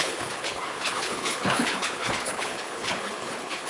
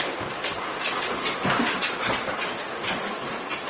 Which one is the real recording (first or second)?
second